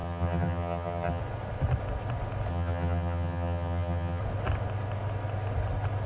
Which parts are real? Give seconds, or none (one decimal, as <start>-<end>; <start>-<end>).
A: 1.2-2.5; 4.2-6.1